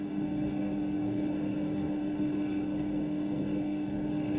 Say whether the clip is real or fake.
fake